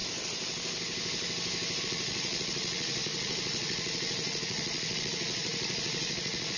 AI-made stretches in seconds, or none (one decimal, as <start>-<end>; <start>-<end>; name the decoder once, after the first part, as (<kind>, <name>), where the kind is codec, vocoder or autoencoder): 1.8-6.6 (vocoder, Vocos)